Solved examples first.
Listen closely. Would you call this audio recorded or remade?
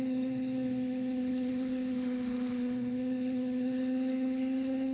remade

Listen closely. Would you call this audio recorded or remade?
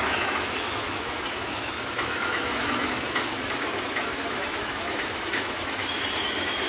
remade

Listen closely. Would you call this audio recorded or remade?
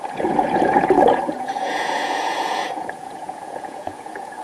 remade